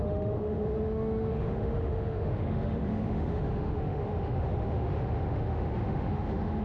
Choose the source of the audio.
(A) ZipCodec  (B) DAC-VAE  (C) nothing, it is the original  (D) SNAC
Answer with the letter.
B